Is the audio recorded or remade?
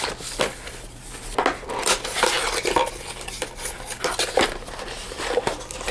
recorded